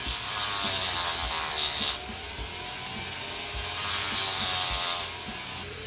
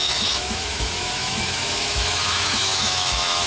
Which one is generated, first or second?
second